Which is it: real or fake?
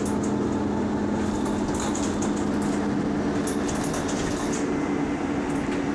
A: real